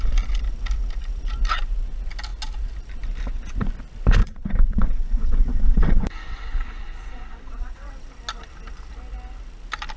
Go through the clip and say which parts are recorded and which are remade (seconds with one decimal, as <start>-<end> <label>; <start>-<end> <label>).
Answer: 0.0-4.2 recorded; 4.2-7.9 remade; 7.9-10.0 recorded